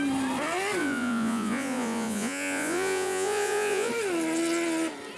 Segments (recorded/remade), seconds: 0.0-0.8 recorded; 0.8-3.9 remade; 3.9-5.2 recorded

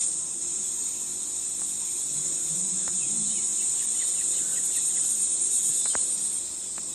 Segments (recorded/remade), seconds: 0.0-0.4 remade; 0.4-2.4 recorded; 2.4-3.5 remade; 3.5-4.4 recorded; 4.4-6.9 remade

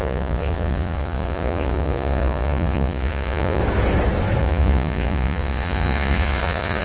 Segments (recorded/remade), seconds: 0.0-3.6 remade; 3.6-4.4 recorded; 4.4-6.8 remade